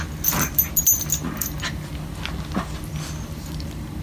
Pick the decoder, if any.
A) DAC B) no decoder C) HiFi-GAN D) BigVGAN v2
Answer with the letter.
B